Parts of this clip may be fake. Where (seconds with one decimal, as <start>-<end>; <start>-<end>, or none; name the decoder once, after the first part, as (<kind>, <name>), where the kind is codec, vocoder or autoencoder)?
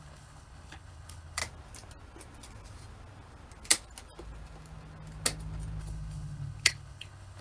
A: 0.0-1.4 (codec, HILCodec); 5.8-7.4